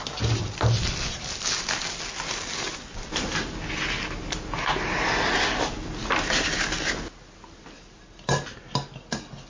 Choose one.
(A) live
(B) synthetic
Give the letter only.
A